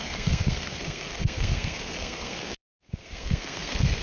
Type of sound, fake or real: fake